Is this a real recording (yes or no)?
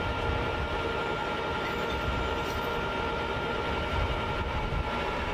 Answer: no